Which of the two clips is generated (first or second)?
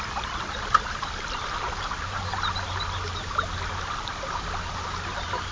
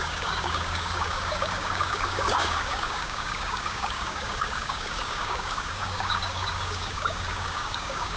second